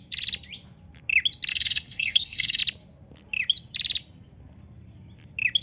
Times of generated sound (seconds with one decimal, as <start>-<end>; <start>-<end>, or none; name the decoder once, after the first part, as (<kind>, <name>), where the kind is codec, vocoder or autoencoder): 1.5-2.6 (codec, SNAC)